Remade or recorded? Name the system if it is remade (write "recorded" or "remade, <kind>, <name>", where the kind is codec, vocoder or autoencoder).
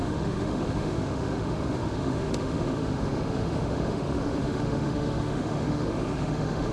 remade, autoencoder, DAC-VAE